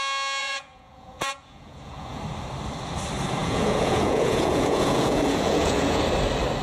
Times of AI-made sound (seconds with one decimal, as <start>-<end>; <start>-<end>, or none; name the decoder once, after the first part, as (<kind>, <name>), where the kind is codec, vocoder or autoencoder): 0.4-2.2 (vocoder, Vocos); 3.4-6.0